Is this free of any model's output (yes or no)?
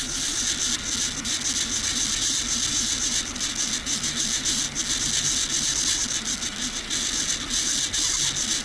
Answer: yes